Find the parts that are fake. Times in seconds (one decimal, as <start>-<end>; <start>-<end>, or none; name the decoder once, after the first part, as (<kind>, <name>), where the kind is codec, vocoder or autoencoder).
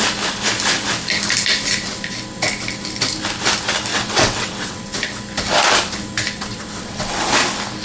3.9-4.8 (vocoder, WaveNeXt); 6.5-7.3